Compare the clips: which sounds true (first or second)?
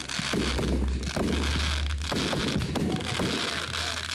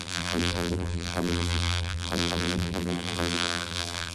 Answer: first